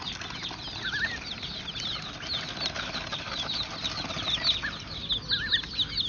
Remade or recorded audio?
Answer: recorded